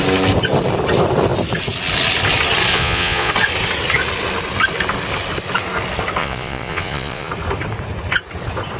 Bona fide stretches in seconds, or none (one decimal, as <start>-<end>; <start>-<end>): 0.0-2.7; 3.3-6.2; 7.3-8.8